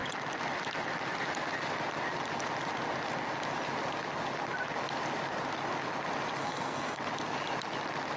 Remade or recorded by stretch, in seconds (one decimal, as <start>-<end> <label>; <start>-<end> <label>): 0.0-6.4 recorded; 6.4-7.0 remade; 7.0-8.2 recorded